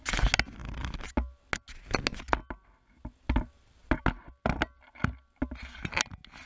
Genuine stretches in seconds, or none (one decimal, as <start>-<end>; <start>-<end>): 0.0-6.5